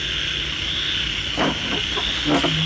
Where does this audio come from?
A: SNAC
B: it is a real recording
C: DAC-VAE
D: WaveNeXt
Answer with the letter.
B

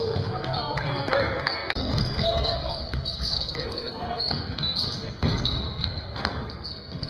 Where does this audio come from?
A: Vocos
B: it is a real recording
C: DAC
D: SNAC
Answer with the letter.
D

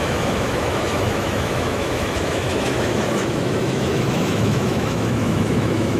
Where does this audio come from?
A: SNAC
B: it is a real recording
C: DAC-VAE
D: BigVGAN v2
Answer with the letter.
C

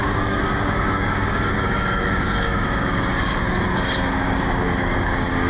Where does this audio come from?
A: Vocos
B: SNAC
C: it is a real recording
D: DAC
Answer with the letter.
D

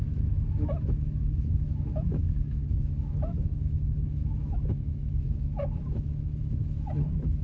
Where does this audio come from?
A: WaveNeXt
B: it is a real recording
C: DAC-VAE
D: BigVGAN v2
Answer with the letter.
C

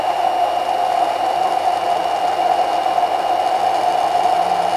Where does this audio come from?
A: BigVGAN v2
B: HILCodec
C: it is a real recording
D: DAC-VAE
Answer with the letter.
C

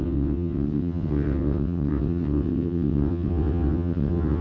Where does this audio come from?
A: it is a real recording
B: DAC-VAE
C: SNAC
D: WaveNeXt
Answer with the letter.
D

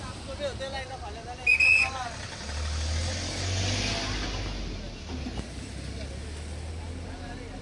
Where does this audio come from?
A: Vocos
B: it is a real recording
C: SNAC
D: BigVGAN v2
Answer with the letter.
B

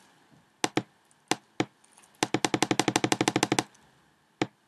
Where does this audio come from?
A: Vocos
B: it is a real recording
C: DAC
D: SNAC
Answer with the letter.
B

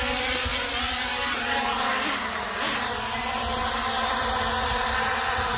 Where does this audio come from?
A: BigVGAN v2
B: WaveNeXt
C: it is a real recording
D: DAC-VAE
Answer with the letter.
C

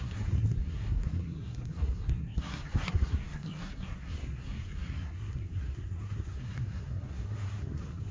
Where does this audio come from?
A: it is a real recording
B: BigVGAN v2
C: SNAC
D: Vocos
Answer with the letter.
C